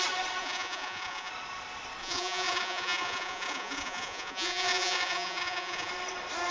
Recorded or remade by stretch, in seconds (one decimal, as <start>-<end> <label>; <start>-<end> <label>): 0.0-0.4 recorded; 0.4-1.3 remade; 1.3-2.0 recorded; 2.0-5.9 remade; 5.9-6.5 recorded